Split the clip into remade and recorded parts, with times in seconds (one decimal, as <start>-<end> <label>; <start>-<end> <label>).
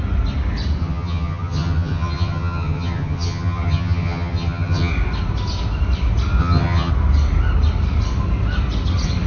0.0-0.8 recorded; 0.8-4.9 remade; 4.9-6.4 recorded; 6.4-6.9 remade; 6.9-9.3 recorded